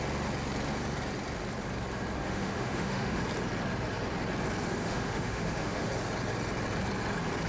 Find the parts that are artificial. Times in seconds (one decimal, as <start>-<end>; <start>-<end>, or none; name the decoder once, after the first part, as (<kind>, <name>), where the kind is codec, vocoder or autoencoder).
2.2-3.2 (autoencoder, DAC-VAE); 4.8-5.9